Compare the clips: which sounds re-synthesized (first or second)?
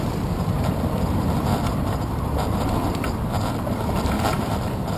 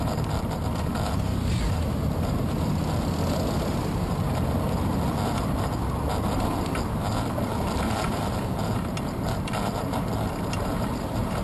first